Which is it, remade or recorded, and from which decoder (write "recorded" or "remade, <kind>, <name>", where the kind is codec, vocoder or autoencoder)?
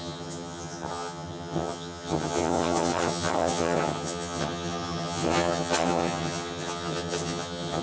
remade, vocoder, HiFi-GAN